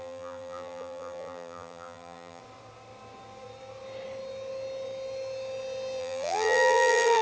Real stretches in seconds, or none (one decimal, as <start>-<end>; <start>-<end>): 2.4-6.0